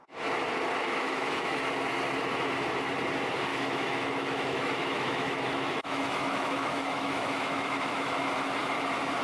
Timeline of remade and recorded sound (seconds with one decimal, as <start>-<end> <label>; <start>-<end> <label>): 0.0-0.8 recorded; 0.8-1.6 remade; 1.6-3.5 recorded; 3.5-8.5 remade; 8.5-9.2 recorded